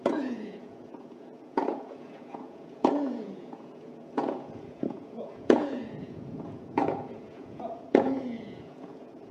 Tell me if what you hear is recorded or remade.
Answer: remade